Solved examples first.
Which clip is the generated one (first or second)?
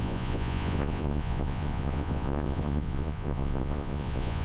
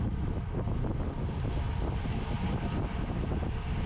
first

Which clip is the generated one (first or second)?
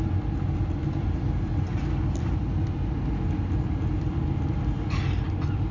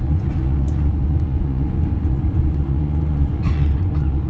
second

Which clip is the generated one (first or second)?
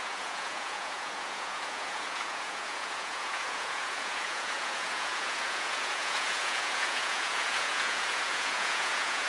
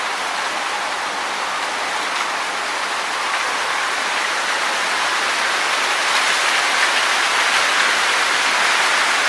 first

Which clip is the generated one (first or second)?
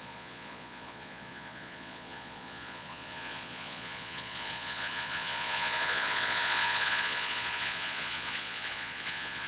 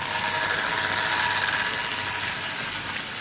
first